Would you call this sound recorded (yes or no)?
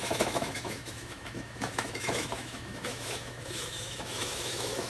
no